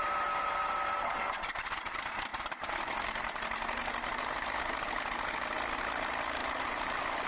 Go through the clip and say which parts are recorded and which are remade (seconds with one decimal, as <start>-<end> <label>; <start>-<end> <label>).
0.0-6.4 recorded; 6.4-7.3 remade